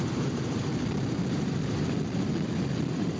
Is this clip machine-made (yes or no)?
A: yes